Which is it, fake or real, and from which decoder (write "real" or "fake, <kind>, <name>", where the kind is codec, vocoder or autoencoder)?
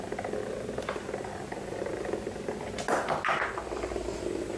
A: real